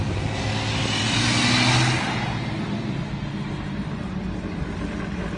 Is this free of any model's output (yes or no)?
yes